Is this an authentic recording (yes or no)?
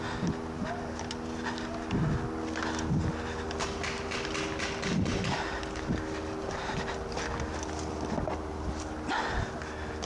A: yes